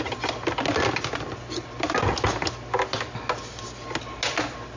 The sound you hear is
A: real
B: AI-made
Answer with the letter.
A